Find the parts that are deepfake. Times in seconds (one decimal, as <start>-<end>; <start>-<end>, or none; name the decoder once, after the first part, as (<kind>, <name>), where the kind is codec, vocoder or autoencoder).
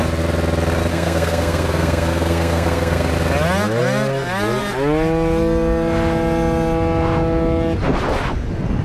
0.9-3.1 (codec, SNAC)